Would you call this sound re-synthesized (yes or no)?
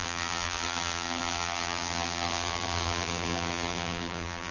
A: yes